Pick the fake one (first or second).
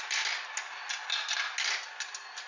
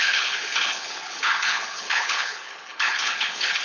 second